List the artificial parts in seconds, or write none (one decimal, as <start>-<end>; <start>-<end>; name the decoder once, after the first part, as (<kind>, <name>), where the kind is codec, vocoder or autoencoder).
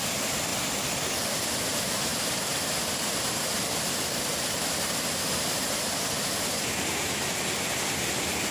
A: 0.0-8.5 (vocoder, BigVGAN v2)